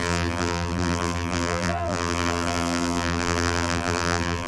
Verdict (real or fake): fake